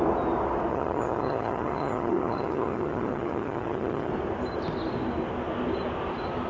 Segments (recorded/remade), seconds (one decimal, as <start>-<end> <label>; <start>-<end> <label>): 0.0-0.7 recorded; 0.7-4.1 remade; 4.1-6.5 recorded